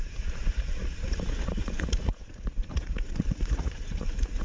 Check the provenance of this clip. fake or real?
fake